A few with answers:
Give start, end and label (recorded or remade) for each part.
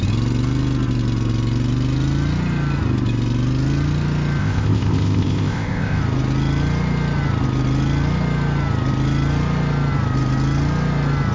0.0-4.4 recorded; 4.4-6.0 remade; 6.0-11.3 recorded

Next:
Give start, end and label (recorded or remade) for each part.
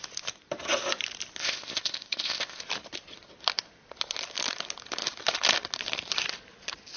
0.0-1.4 recorded; 1.4-2.6 remade; 2.6-7.0 recorded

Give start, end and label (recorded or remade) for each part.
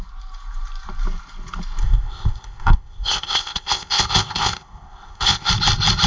0.0-1.8 recorded; 1.8-5.5 remade; 5.5-6.1 recorded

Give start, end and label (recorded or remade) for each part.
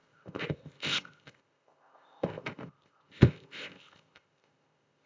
0.0-5.1 remade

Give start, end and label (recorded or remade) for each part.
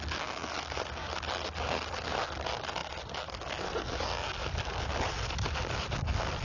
0.0-6.4 recorded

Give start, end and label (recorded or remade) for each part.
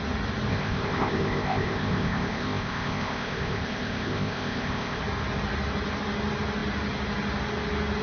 0.0-0.5 recorded; 0.5-5.0 remade; 5.0-8.0 recorded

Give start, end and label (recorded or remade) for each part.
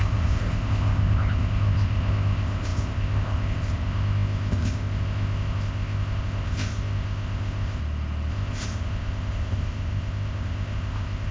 0.0-7.8 remade; 7.8-8.3 recorded; 8.3-11.3 remade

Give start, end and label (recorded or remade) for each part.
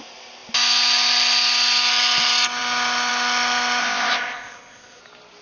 0.0-3.8 recorded; 3.8-5.0 remade; 5.0-5.4 recorded